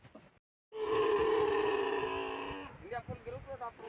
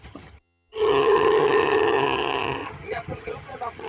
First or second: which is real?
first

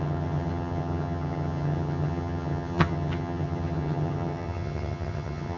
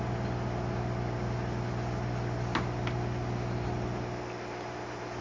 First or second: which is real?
second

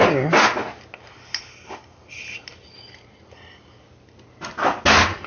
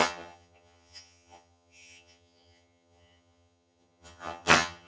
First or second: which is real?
first